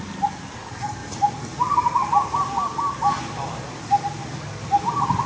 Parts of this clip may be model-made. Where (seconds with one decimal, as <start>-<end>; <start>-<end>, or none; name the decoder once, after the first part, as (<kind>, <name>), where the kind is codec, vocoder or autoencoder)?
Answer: none